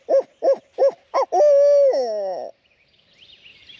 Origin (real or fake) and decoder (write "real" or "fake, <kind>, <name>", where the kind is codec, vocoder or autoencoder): real